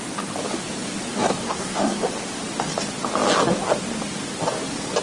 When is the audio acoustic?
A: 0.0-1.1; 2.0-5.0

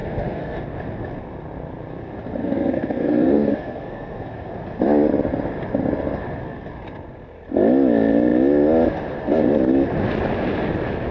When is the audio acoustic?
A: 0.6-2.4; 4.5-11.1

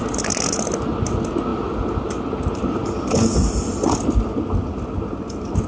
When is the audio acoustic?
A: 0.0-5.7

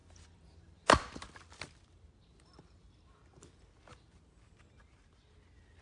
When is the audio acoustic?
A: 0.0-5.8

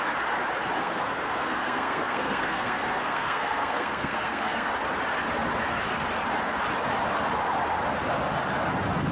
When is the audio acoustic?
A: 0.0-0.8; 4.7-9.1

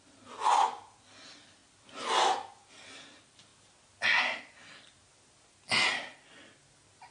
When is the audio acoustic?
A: 0.0-7.1